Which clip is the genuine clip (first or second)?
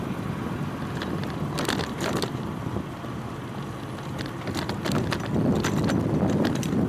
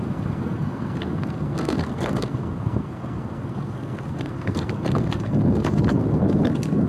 first